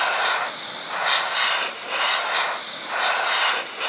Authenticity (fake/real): real